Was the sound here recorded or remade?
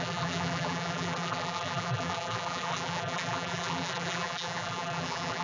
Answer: remade